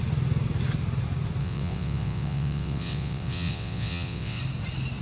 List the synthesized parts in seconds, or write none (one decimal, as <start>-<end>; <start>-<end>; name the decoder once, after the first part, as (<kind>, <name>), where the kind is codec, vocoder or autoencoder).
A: 1.4-4.4 (vocoder, WaveNeXt)